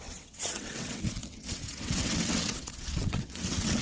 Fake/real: fake